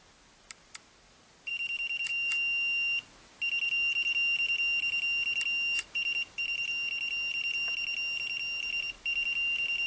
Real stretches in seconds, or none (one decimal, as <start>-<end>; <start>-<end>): 0.0-9.9